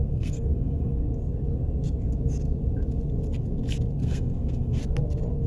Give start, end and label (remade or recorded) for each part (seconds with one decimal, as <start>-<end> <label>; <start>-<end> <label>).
0.0-1.0 remade; 1.0-4.0 recorded; 4.0-4.8 remade; 4.8-5.5 recorded